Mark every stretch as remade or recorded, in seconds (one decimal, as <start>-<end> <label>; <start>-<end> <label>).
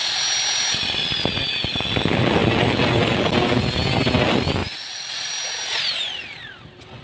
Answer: 0.0-4.6 recorded; 4.6-5.3 remade; 5.3-7.0 recorded